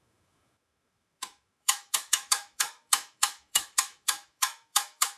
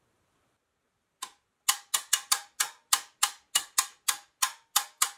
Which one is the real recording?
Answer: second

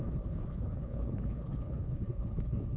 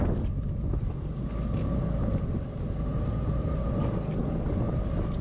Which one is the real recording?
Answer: second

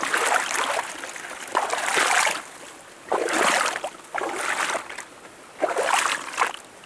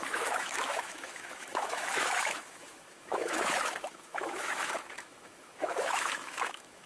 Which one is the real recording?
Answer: first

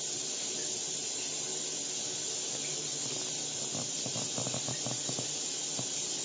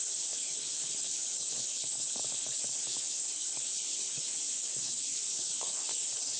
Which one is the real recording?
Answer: first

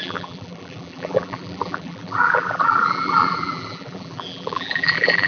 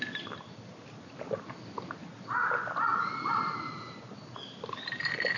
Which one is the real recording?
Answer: second